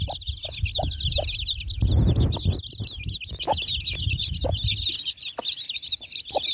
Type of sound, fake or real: real